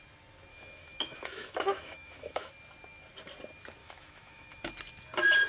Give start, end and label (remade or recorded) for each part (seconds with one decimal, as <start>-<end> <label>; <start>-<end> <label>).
0.0-0.5 recorded; 0.5-2.5 remade; 2.5-3.8 recorded; 3.8-4.7 remade; 4.7-5.5 recorded